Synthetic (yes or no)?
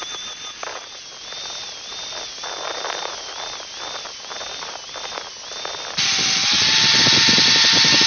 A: no